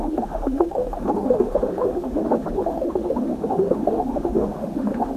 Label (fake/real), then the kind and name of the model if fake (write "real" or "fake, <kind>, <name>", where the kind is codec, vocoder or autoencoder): fake, autoencoder, DAC-VAE